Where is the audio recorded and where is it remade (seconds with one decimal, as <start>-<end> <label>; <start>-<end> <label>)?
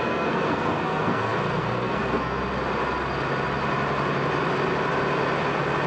0.0-2.4 remade; 2.4-5.9 recorded